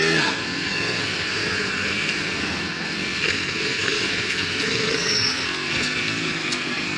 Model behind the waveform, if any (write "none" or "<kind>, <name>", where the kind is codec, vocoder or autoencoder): codec, SNAC